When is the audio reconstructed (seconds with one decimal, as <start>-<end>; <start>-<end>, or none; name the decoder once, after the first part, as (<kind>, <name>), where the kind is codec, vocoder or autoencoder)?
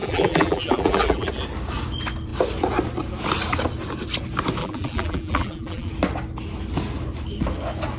0.0-1.3 (vocoder, BigVGAN v2); 4.6-5.9